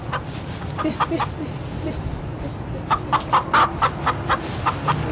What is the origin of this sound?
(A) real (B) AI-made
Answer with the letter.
A